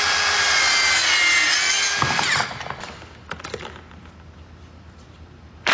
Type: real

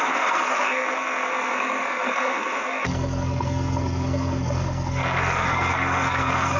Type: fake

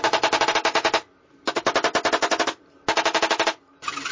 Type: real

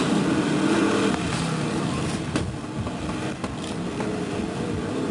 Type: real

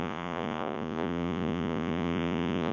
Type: fake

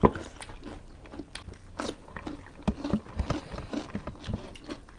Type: real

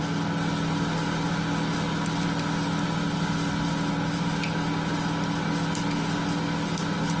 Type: real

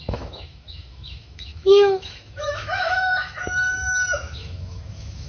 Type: fake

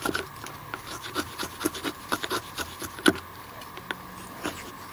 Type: real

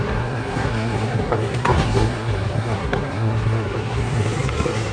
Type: fake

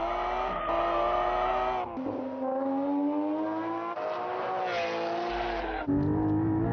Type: real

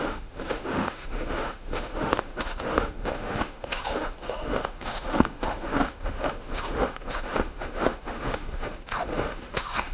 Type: fake